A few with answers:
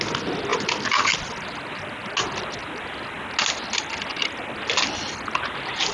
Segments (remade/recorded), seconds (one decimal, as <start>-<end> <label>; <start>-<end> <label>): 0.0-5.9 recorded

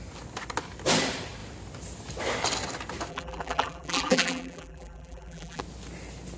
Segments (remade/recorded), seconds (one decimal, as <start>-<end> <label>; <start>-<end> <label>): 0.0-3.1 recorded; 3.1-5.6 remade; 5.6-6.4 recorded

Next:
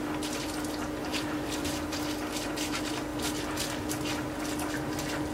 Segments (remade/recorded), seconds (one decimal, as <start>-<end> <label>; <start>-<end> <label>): 0.0-1.1 recorded; 1.1-2.0 remade; 2.0-5.3 recorded

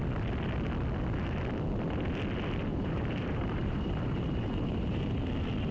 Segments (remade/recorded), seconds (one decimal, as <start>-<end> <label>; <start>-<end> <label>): 0.0-2.7 recorded; 2.7-5.0 remade; 5.0-5.7 recorded

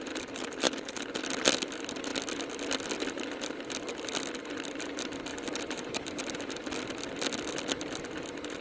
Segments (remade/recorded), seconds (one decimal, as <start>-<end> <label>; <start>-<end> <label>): 0.0-5.3 recorded; 5.3-6.2 remade; 6.2-8.6 recorded

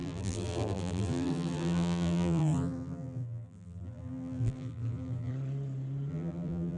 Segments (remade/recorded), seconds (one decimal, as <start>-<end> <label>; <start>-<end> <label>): 0.0-5.3 remade; 5.3-6.1 recorded; 6.1-6.8 remade

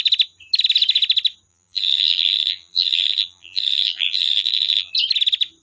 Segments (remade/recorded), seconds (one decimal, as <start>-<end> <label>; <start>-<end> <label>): 0.0-1.5 recorded; 1.5-4.9 remade; 4.9-5.6 recorded